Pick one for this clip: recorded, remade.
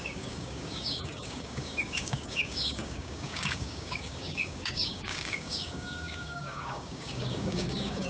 remade